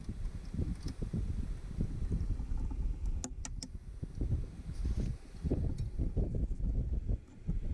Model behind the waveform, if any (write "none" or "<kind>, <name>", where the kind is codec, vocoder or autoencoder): none